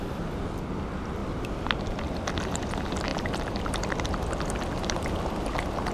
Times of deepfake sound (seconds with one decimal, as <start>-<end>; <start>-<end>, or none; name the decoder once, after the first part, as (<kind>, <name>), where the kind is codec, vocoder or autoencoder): none